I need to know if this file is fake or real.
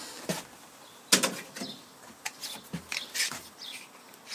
real